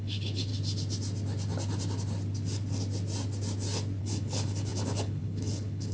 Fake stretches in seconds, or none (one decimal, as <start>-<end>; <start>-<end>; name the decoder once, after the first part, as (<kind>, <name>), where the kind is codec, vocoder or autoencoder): 0.0-0.5 (codec, HILCodec); 4.0-5.9